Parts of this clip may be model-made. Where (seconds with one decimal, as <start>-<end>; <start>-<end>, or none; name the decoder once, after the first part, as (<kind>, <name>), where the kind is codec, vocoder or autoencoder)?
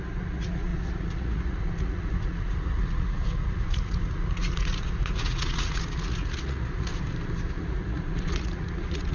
0.0-6.9 (vocoder, Vocos); 7.5-9.1